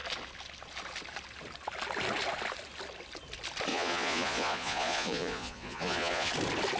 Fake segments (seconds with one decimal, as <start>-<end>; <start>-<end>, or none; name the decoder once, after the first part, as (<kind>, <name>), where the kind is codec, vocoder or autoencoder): 3.7-6.3 (vocoder, Vocos)